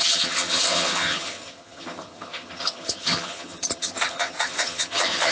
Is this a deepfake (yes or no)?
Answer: yes